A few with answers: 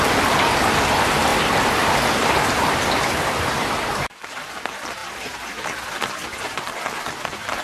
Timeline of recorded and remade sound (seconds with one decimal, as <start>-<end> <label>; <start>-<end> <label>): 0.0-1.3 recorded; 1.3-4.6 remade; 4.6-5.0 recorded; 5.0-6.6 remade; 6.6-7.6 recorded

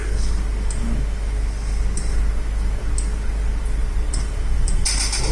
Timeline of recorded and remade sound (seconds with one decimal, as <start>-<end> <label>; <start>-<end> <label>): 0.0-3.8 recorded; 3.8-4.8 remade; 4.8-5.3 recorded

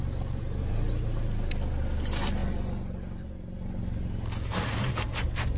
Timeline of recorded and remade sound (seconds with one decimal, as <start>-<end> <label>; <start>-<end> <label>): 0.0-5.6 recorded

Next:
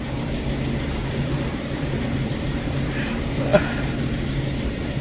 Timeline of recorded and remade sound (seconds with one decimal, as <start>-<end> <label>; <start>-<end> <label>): 0.0-1.0 recorded; 1.0-2.9 remade; 2.9-5.0 recorded